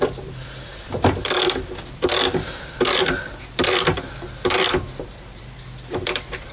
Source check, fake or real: fake